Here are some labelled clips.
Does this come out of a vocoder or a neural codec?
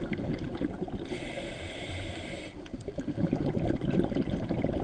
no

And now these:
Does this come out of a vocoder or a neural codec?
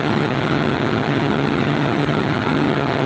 yes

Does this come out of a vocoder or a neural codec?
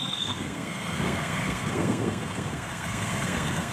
yes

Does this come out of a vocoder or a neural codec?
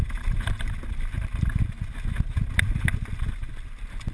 no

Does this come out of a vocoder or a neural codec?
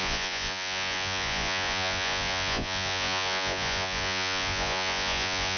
yes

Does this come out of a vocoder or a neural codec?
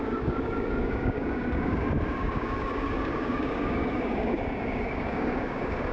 yes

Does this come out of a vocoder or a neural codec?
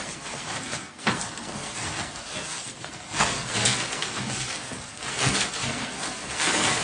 yes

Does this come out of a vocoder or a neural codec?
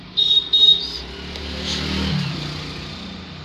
no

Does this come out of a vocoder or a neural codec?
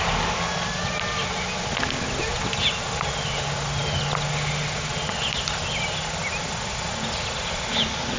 no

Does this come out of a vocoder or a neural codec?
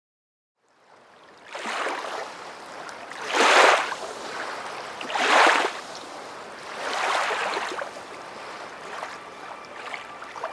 yes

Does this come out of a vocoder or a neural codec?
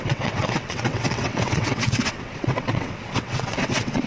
yes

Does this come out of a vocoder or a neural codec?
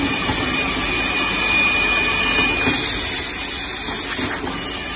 no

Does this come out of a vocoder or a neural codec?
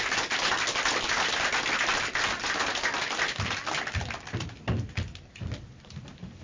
no